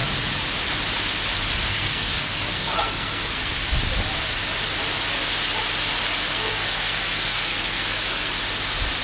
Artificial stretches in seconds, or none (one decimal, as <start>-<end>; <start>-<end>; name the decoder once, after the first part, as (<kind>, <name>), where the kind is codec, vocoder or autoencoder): 1.7-3.5 (codec, SNAC); 6.2-8.3